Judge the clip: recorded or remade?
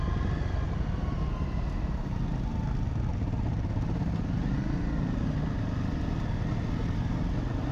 recorded